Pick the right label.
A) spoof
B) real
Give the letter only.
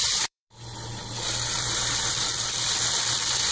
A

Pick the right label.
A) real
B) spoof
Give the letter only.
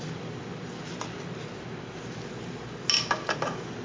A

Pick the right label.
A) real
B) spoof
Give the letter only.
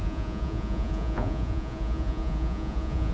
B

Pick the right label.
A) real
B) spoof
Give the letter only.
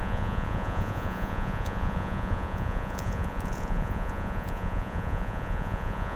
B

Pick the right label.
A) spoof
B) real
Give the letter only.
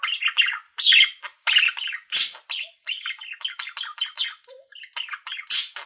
B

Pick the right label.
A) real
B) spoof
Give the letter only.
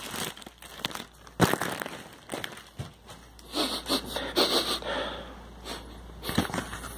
A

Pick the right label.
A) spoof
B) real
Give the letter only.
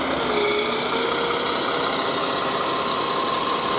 B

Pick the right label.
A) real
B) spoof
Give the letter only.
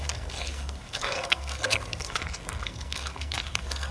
B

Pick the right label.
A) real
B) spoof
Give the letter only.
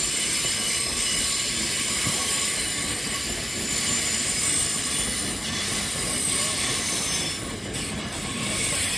A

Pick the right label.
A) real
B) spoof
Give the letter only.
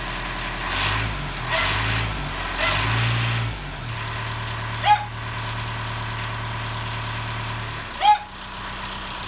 A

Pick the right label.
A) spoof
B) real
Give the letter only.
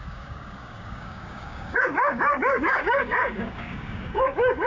A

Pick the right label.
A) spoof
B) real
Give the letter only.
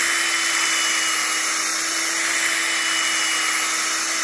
B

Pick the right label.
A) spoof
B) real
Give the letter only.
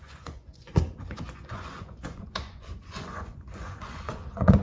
A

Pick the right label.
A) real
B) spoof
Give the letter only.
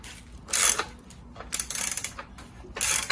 A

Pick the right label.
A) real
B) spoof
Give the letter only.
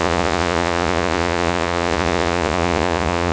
B